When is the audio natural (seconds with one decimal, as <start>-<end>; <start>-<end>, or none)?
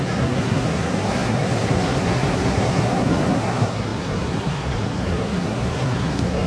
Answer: none